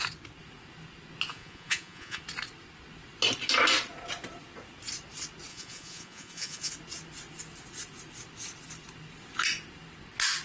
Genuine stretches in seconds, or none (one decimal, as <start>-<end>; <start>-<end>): 0.0-1.3; 2.2-5.5; 6.7-10.4